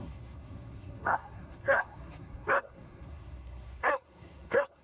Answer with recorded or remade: remade